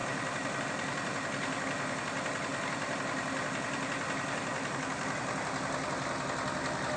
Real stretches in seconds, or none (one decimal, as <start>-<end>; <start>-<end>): 0.0-7.0